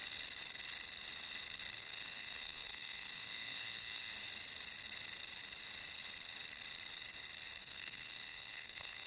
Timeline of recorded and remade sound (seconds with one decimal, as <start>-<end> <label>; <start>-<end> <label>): 0.0-1.8 recorded; 1.8-4.1 remade; 4.1-7.6 recorded; 7.6-9.1 remade